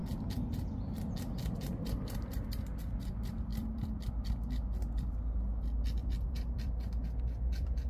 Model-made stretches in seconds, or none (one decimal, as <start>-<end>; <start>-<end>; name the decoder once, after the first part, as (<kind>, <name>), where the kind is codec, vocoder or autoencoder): 3.5-4.1 (vocoder, BigVGAN v2); 6.0-6.7